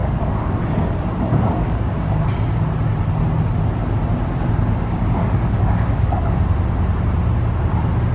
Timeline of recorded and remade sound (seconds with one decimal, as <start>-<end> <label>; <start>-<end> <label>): 0.0-0.6 remade; 0.6-1.3 recorded; 1.3-1.9 remade; 1.9-5.2 recorded; 5.2-6.4 remade; 6.4-8.1 recorded